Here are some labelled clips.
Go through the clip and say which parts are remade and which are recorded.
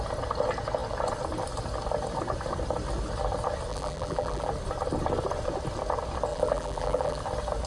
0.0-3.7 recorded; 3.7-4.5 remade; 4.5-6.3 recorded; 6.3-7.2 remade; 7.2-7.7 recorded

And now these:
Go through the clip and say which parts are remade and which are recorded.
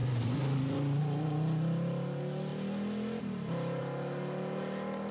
0.0-5.1 recorded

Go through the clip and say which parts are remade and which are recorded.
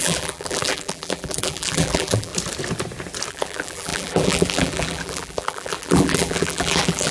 0.0-2.3 remade; 2.3-3.3 recorded; 3.3-7.1 remade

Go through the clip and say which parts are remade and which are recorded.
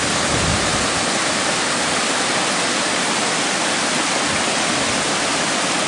0.0-5.9 recorded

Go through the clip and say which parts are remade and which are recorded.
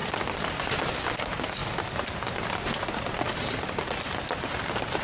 0.0-0.9 remade; 0.9-1.6 recorded; 1.6-4.6 remade; 4.6-5.0 recorded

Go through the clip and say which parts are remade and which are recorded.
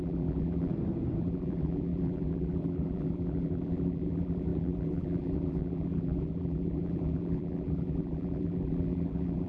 0.0-0.7 remade; 0.7-1.2 recorded; 1.2-9.5 remade